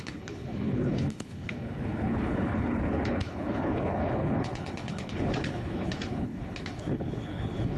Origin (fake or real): fake